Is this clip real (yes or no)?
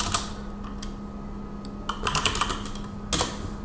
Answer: yes